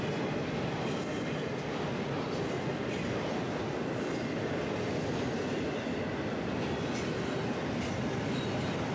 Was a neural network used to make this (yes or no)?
no